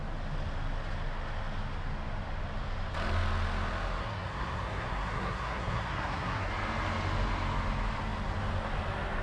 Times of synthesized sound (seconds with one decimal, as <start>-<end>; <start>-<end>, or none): 4.0-6.5

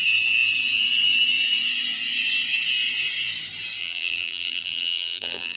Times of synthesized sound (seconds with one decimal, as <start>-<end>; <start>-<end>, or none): 3.8-5.6

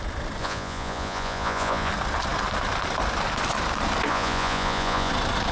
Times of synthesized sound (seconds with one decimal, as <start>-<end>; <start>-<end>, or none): 0.4-1.9; 4.1-5.1

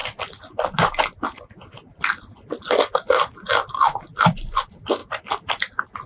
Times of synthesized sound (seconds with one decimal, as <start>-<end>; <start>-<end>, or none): none

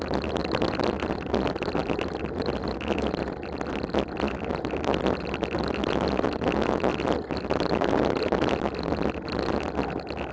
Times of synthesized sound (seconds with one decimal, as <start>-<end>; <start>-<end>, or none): 0.0-6.9

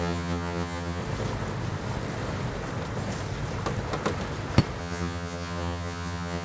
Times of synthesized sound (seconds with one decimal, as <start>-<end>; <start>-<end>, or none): 0.0-1.0; 4.8-6.4

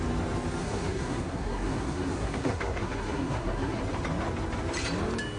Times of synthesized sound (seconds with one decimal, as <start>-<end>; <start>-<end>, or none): 0.6-3.8

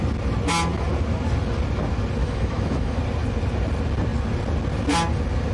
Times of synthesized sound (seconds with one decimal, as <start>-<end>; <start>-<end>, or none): 2.2-3.0